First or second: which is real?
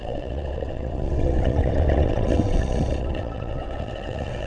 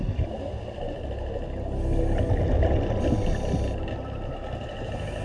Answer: second